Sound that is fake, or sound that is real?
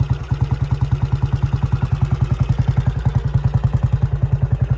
real